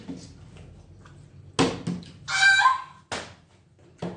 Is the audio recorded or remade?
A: recorded